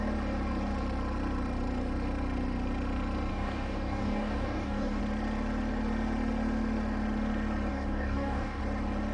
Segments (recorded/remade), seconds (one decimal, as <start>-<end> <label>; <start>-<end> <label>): 0.0-3.3 recorded; 3.3-5.0 remade; 5.0-7.7 recorded; 7.7-8.6 remade; 8.6-9.1 recorded

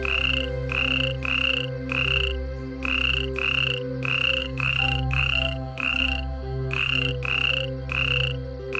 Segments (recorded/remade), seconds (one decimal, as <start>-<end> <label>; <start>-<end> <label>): 0.0-4.4 recorded; 4.4-7.1 remade; 7.1-8.8 recorded

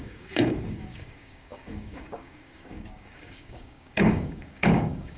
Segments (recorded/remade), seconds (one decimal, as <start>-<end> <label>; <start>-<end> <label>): 0.0-5.2 remade

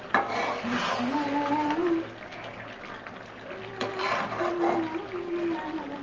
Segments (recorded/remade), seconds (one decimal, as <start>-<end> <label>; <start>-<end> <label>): 0.0-6.0 recorded

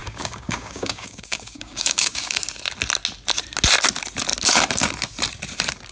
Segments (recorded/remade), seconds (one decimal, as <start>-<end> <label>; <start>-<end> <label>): 0.0-2.4 remade; 2.4-5.9 recorded

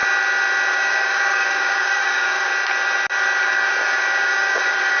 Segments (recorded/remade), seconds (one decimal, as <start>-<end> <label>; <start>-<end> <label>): 0.0-0.7 recorded; 0.7-2.5 remade; 2.5-3.4 recorded; 3.4-5.0 remade